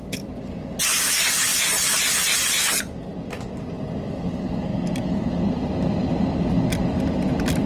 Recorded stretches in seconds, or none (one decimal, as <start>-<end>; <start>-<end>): 0.0-7.7